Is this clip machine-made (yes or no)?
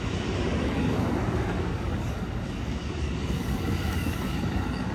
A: yes